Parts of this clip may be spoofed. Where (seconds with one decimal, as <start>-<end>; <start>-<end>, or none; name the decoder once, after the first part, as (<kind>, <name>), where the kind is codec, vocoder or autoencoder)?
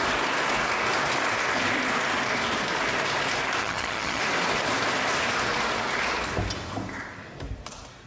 3.6-4.2 (vocoder, HiFi-GAN)